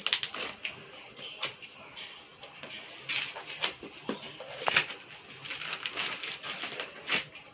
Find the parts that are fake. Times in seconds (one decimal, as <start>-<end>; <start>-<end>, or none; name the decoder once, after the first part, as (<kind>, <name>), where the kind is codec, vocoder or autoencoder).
none